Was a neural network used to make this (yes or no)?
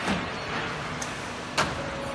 no